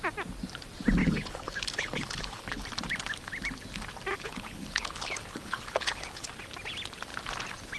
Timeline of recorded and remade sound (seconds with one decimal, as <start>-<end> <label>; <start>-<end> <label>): 0.0-1.0 recorded; 1.0-2.6 remade; 2.6-4.1 recorded; 4.1-6.3 remade; 6.3-7.8 recorded